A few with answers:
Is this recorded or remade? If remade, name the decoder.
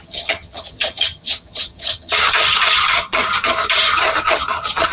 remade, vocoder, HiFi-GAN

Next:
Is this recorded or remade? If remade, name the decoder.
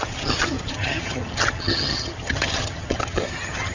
remade, vocoder, HiFi-GAN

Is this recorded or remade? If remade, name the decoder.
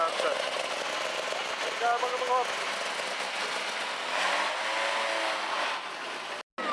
recorded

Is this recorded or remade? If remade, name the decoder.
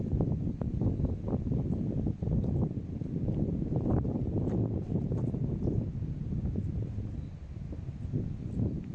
recorded